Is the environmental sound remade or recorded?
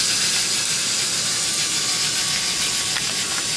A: recorded